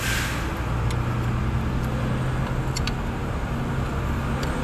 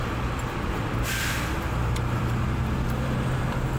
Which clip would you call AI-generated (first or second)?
second